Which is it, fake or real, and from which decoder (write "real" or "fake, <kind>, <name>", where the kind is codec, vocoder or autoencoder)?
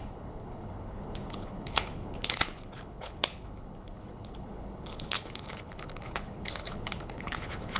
fake, codec, HILCodec